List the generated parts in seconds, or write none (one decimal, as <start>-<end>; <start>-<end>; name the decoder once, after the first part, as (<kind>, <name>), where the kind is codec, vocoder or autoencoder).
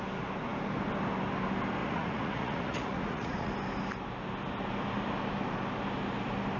1.8-3.5 (vocoder, Vocos)